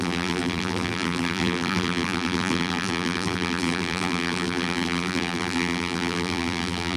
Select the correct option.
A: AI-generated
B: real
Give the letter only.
A